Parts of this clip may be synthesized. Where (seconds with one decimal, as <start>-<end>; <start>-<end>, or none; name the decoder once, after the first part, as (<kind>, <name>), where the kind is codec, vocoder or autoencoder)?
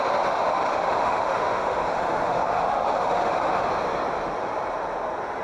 0.5-3.7 (autoencoder, DAC-VAE)